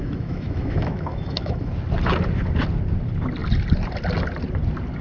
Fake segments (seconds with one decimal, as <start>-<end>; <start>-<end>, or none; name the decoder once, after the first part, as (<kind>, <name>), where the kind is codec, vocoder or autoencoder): 0.0-1.7 (autoencoder, DAC-VAE)